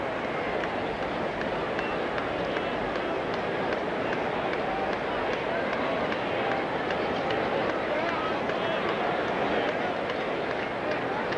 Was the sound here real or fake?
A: real